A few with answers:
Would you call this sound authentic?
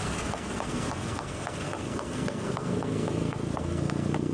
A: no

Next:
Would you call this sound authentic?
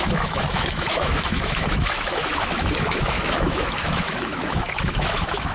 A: no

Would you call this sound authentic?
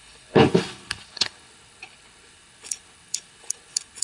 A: no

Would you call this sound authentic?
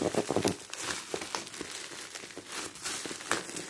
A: yes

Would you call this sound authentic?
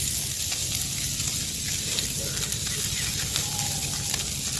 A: yes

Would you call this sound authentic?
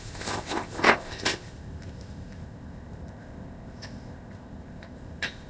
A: no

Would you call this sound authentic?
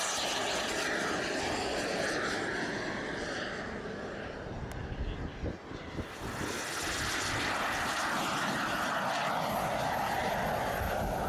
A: yes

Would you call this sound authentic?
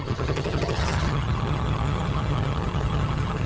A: no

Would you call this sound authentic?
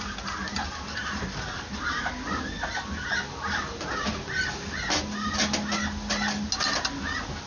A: yes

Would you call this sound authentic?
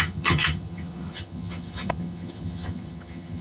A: no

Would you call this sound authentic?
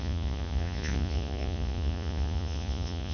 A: no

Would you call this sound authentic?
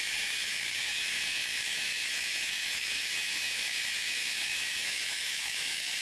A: no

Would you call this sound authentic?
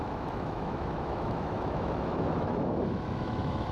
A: no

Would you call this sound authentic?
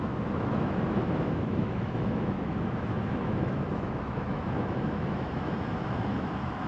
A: no